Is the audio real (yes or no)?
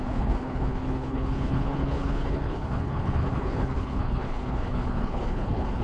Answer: no